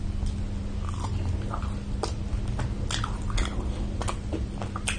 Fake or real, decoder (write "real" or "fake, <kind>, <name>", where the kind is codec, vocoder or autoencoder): real